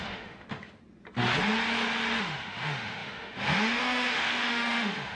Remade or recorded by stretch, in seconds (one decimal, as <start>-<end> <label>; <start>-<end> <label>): 0.0-0.8 remade; 0.8-2.2 recorded; 2.2-5.1 remade